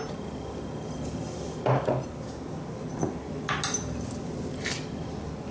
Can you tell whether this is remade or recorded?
recorded